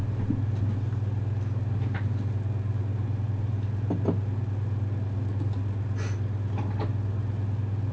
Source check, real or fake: real